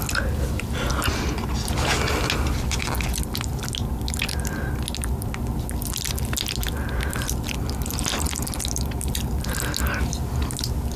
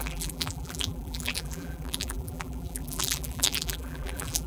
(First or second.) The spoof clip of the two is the second